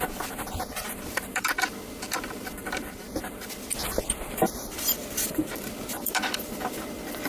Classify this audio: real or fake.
fake